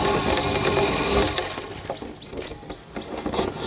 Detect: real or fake real